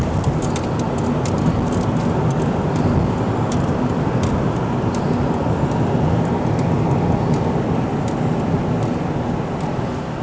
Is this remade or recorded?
recorded